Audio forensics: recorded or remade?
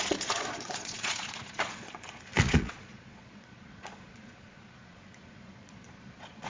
remade